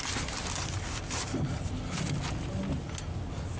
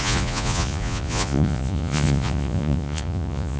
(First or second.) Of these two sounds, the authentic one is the first